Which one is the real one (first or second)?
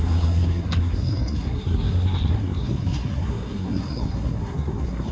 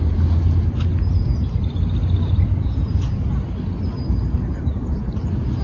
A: second